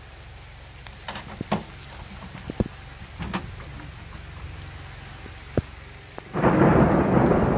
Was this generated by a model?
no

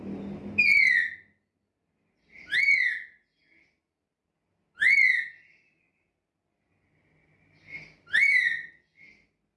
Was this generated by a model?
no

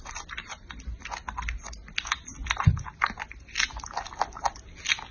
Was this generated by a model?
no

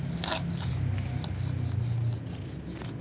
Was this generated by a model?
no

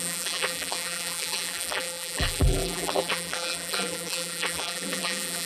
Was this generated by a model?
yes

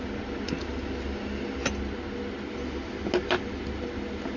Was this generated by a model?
no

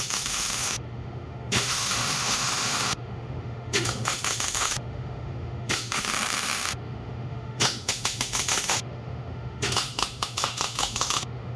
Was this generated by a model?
yes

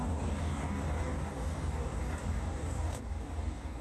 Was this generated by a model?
yes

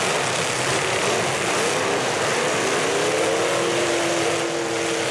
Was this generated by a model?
no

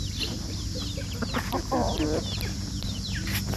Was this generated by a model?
no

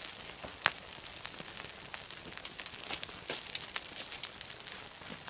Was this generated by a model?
no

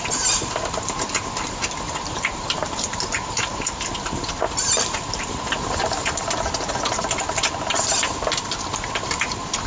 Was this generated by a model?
yes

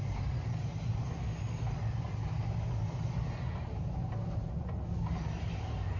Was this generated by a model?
no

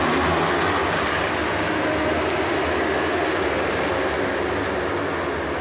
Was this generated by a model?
no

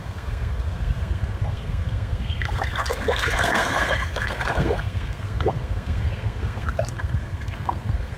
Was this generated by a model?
yes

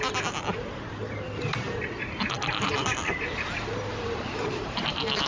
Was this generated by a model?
no